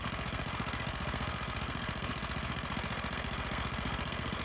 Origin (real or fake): fake